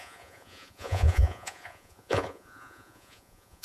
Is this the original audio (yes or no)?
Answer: no